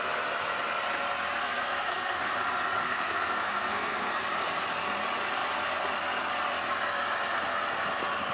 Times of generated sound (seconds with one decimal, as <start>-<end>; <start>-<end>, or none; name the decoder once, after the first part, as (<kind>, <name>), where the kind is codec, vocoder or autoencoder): 1.4-2.3 (codec, SNAC); 2.8-4.2